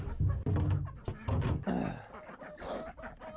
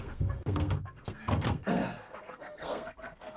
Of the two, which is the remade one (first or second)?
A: second